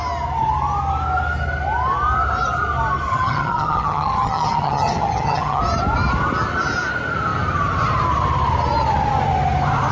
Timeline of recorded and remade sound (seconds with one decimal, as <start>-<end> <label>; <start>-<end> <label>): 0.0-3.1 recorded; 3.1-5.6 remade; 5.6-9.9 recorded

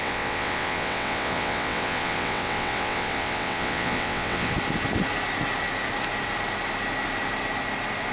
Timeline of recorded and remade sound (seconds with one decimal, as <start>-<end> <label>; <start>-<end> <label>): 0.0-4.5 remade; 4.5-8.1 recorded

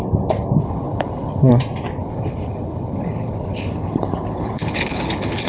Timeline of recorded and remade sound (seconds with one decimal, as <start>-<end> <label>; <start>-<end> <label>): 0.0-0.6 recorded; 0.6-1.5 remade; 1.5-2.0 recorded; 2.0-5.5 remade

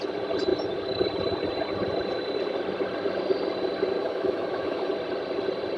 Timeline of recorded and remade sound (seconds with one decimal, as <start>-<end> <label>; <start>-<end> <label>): 0.0-4.0 recorded; 4.0-4.9 remade; 4.9-5.8 recorded

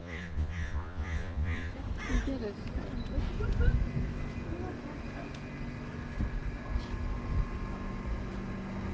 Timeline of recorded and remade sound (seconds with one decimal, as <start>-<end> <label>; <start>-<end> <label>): 0.0-1.7 remade; 1.7-8.9 recorded

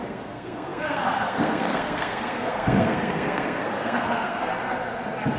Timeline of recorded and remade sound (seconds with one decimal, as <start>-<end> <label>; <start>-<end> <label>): 0.0-4.5 remade; 4.5-5.4 recorded